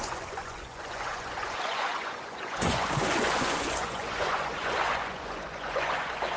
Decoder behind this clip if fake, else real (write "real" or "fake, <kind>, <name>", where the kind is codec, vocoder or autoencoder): fake, vocoder, Vocos